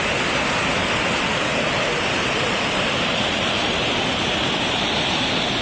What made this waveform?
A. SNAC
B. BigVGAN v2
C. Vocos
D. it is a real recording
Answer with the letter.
B